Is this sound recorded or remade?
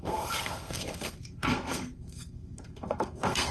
remade